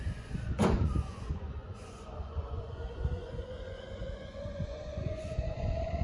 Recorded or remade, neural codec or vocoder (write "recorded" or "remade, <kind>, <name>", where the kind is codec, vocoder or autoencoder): remade, vocoder, Vocos